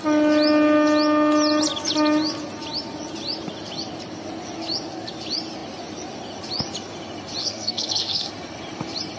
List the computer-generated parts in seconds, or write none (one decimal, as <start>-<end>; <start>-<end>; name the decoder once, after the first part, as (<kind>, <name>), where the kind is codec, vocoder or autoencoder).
7.4-8.3 (codec, SNAC)